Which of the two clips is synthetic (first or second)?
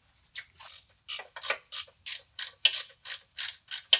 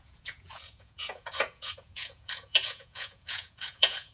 second